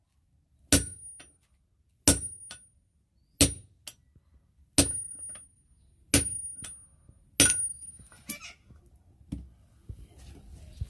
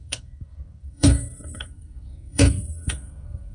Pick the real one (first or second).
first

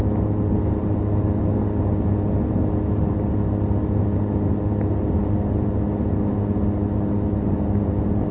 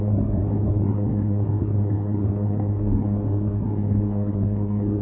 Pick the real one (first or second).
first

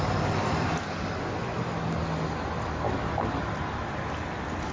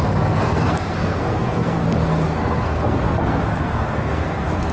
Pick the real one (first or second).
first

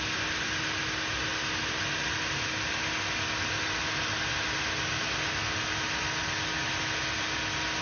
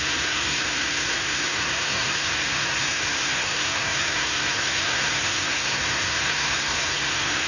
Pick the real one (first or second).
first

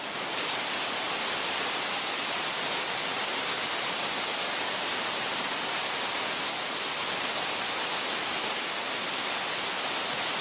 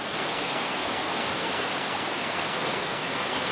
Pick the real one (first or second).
first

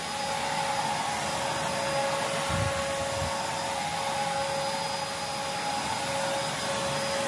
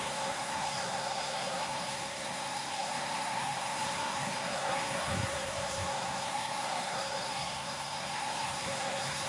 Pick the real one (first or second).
first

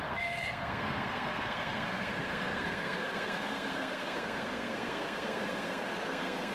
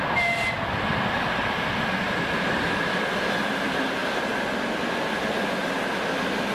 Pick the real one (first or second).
second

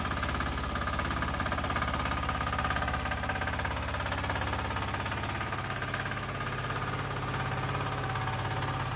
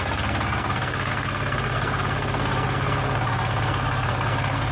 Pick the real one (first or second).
first